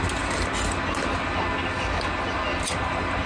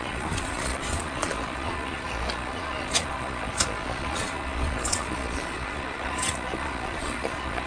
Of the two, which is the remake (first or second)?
second